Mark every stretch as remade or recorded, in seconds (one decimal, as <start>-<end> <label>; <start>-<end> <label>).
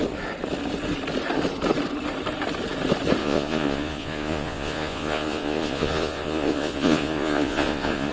0.0-3.2 recorded; 3.2-8.1 remade